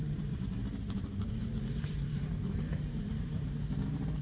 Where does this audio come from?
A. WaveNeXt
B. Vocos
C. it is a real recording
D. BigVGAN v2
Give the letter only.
D